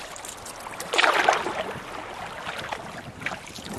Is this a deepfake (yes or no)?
no